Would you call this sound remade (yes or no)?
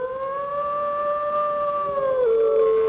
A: no